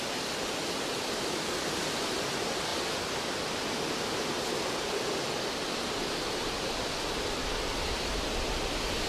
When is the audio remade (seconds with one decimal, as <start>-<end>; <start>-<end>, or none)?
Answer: 0.0-2.7; 4.7-9.1